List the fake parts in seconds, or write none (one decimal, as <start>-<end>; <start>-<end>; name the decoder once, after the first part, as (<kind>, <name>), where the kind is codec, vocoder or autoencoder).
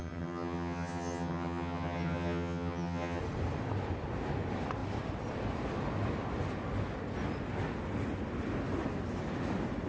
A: 0.0-3.2 (vocoder, HiFi-GAN)